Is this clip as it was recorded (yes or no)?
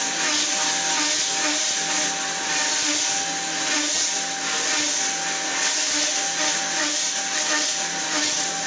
yes